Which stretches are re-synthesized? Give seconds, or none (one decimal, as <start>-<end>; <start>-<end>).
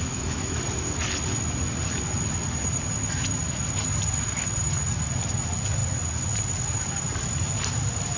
0.0-0.6